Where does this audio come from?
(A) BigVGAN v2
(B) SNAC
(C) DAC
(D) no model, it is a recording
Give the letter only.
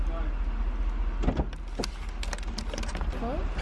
D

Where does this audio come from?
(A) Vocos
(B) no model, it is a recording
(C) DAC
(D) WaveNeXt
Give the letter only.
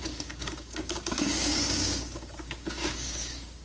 C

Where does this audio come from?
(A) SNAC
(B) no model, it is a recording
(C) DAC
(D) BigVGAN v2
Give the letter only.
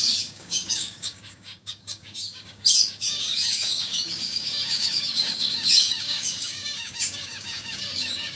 C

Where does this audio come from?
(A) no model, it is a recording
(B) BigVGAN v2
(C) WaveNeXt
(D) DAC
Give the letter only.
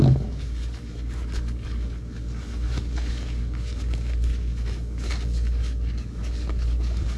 D